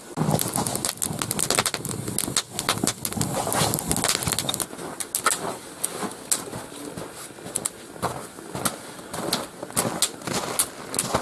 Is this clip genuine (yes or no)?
yes